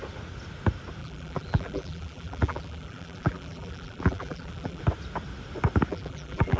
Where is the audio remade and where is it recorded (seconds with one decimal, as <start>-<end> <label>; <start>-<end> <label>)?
0.0-1.0 recorded; 1.0-4.8 remade; 4.8-5.9 recorded; 5.9-6.6 remade